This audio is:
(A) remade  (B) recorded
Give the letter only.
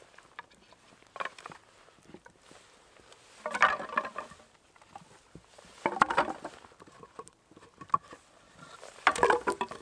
B